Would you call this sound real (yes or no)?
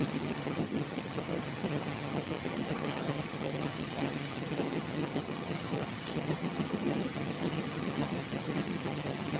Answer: no